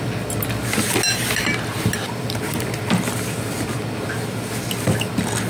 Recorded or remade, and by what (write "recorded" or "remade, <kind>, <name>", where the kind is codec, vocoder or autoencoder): recorded